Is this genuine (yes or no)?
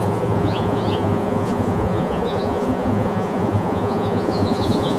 no